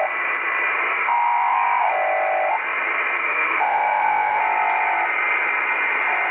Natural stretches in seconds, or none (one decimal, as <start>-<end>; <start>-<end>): 0.0-0.9; 1.9-3.2; 4.4-6.3